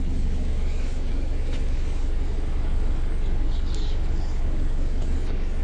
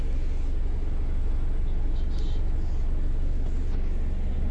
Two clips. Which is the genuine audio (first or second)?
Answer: second